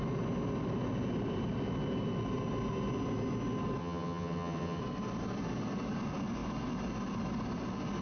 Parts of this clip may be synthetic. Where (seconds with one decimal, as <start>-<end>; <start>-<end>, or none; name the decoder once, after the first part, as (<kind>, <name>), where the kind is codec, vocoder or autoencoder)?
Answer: 3.8-4.8 (vocoder, HiFi-GAN)